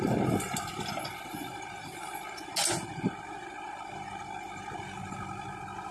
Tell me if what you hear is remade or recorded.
recorded